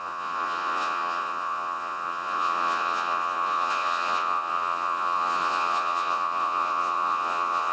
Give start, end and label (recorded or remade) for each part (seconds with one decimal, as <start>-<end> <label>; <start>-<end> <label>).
0.0-7.7 remade